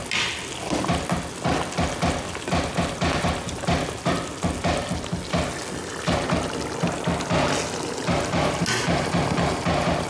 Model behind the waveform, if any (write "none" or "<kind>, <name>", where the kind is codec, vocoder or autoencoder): none